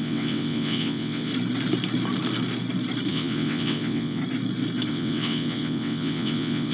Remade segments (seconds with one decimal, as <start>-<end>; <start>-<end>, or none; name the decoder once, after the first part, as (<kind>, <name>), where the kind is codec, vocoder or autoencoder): 0.0-1.3 (vocoder, WaveNeXt); 3.1-4.2; 4.9-6.7